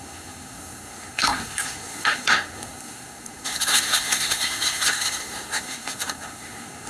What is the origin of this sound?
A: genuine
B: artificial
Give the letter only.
B